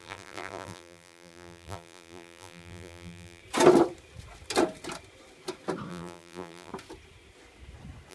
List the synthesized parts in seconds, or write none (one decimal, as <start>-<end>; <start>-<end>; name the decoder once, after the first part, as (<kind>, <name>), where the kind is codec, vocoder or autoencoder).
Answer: 0.0-3.4 (vocoder, BigVGAN v2); 5.9-6.7